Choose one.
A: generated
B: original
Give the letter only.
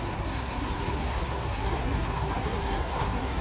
A